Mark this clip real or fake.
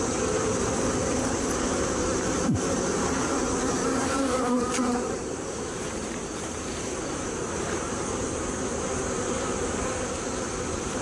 fake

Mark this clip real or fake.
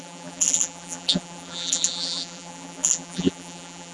fake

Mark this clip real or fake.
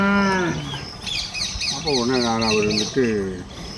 real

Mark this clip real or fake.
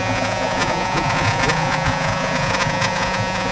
fake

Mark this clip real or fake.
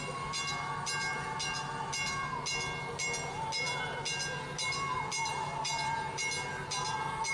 real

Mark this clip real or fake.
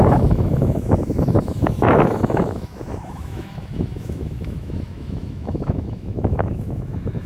fake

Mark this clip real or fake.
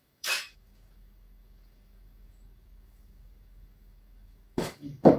fake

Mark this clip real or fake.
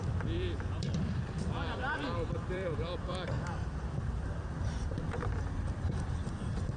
fake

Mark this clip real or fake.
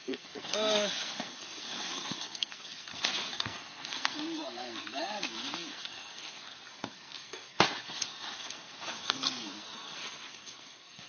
fake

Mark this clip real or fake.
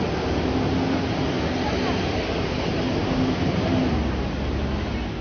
real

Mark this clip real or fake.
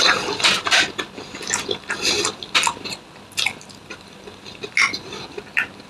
real